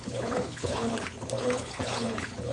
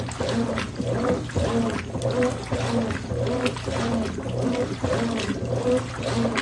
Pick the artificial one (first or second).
first